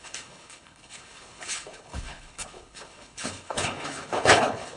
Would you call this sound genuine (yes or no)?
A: no